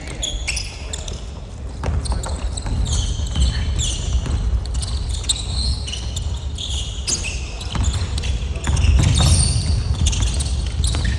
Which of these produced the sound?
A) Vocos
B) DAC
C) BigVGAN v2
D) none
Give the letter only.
D